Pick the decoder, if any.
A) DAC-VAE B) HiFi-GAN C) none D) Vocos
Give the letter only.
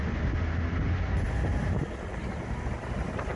C